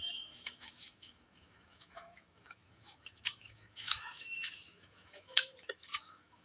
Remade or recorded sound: remade